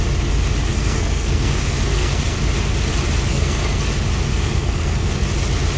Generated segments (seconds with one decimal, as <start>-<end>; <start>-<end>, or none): 0.7-2.4; 3.3-3.9; 4.3-5.1